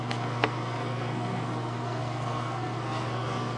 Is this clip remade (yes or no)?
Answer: yes